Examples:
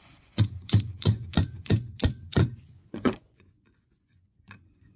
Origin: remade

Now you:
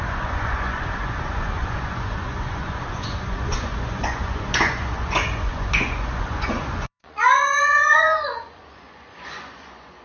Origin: remade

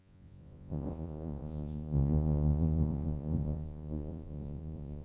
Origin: remade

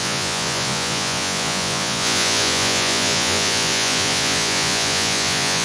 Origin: remade